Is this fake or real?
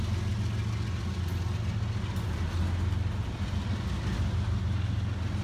real